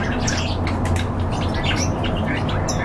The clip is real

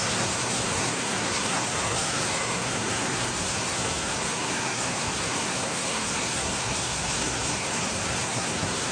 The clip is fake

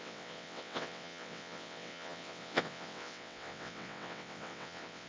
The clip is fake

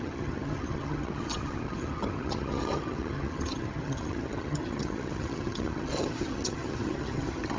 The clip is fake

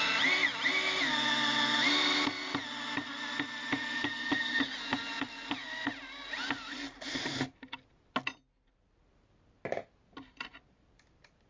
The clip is real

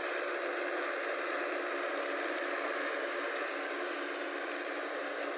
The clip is real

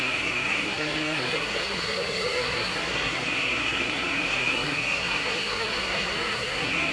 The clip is fake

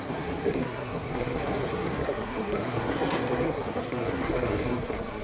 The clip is fake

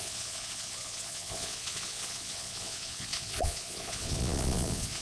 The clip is fake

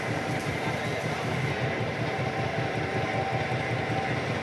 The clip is real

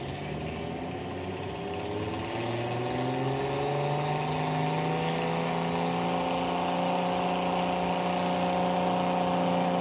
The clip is real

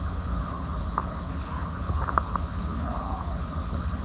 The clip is fake